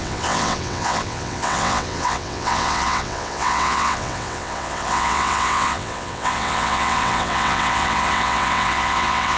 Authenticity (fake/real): fake